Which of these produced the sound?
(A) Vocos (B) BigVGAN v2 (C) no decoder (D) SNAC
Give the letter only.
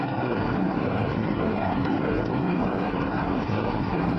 D